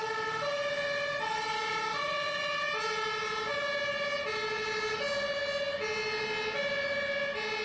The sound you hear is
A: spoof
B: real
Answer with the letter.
B